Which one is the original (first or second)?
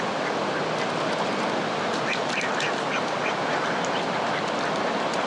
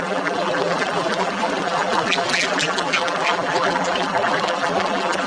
first